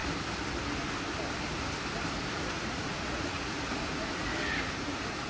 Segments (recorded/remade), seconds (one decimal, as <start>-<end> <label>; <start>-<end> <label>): 0.0-2.3 recorded; 2.3-4.3 remade; 4.3-4.8 recorded; 4.8-5.3 remade